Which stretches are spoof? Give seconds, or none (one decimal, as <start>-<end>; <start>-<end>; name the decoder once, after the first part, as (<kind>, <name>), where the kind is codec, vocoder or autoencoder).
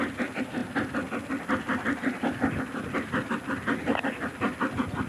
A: none